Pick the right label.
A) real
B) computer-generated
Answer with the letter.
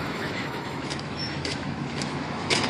B